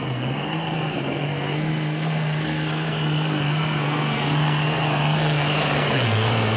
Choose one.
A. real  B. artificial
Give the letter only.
B